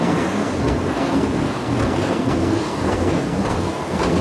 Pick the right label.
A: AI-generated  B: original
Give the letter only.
A